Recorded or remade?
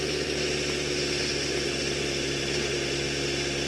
recorded